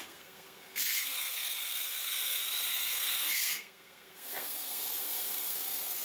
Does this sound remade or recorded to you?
remade